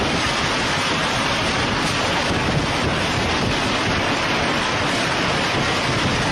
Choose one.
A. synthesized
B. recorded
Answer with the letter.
A